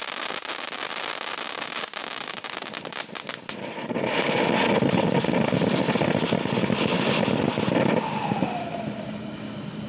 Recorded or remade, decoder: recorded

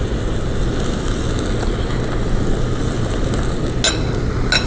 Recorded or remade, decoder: recorded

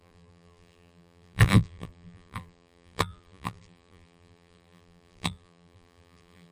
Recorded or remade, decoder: remade, vocoder, BigVGAN v2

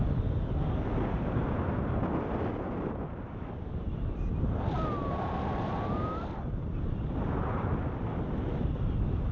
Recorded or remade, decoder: recorded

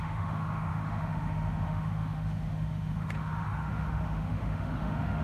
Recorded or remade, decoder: remade, autoencoder, DAC-VAE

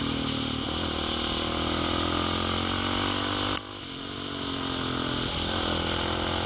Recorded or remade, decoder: recorded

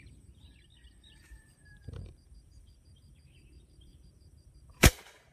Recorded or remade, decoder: remade, vocoder, BigVGAN v2